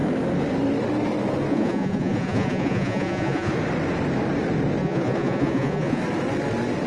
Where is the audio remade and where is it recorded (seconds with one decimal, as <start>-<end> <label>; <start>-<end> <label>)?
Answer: 0.0-1.5 recorded; 1.5-3.5 remade; 3.5-4.8 recorded; 4.8-6.0 remade; 6.0-6.9 recorded

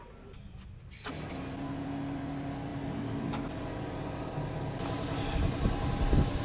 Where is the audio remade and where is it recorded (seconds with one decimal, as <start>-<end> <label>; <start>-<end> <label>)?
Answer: 0.0-6.4 recorded

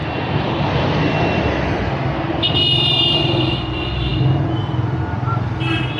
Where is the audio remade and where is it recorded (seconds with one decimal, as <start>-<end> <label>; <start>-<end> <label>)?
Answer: 0.0-6.0 recorded

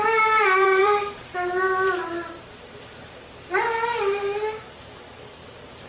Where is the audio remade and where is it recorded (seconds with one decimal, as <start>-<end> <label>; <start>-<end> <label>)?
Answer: 0.0-5.9 remade

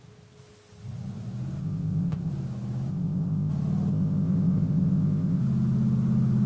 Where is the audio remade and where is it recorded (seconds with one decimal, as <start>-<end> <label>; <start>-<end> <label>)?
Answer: 0.0-1.6 recorded; 1.6-2.3 remade; 2.3-2.9 recorded; 2.9-3.5 remade; 3.5-3.9 recorded; 3.9-5.4 remade; 5.4-6.5 recorded

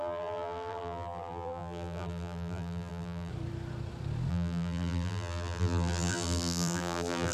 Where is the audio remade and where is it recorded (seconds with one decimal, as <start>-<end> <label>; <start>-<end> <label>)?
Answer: 0.0-3.3 remade; 3.3-4.3 recorded; 4.3-7.3 remade

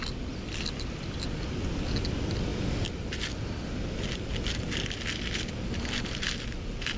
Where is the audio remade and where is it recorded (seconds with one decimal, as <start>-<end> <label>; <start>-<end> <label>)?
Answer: 0.0-7.0 recorded

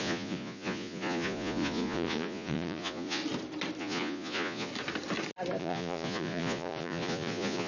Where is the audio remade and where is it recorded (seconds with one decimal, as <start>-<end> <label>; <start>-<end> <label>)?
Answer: 0.0-3.2 remade; 3.2-3.8 recorded; 3.8-4.7 remade; 4.7-5.6 recorded; 5.6-7.7 remade